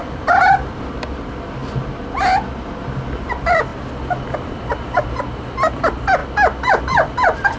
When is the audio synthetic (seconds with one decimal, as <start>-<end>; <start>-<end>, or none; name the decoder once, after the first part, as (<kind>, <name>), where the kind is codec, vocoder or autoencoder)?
0.0-1.6 (vocoder, BigVGAN v2); 3.2-3.7; 5.8-6.2; 6.8-7.6

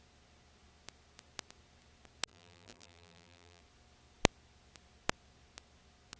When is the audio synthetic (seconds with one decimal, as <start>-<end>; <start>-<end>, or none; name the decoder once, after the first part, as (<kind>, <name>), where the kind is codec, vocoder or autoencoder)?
2.3-3.6 (vocoder, BigVGAN v2)

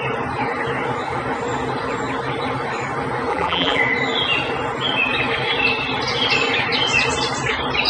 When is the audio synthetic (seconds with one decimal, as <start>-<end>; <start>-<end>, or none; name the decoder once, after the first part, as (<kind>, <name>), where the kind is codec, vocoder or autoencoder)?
3.3-3.8 (vocoder, BigVGAN v2)

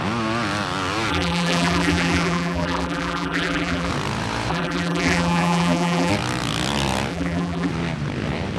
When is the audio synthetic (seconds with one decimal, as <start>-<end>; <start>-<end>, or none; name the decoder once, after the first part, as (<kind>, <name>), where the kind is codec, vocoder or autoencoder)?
1.1-3.9 (vocoder, BigVGAN v2); 4.5-6.1; 7.1-7.7

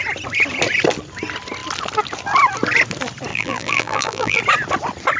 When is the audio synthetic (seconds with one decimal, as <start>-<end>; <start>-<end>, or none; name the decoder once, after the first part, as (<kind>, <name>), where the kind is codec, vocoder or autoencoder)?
3.3-4.4 (vocoder, BigVGAN v2)

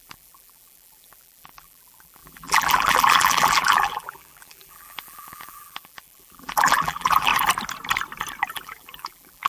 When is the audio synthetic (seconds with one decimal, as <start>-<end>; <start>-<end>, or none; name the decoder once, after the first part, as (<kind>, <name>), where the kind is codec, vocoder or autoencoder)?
0.0-7.3 (vocoder, BigVGAN v2); 8.5-9.5

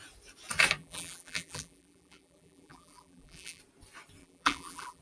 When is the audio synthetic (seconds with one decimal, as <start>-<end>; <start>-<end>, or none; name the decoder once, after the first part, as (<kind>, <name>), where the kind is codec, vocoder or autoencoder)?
0.8-3.6 (vocoder, BigVGAN v2); 4.2-5.0